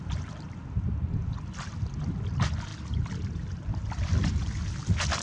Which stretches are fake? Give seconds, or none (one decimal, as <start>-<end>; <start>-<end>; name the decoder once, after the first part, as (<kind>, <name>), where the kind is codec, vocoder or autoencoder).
1.2-1.8 (vocoder, BigVGAN v2); 2.7-4.3